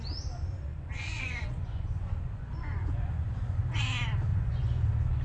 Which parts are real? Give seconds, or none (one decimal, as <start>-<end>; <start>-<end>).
0.0-0.7; 3.8-4.3; 4.8-5.2